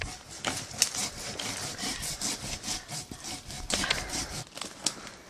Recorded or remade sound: recorded